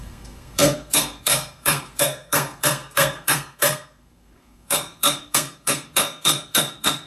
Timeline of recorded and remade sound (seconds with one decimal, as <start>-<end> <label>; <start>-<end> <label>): 0.0-7.1 remade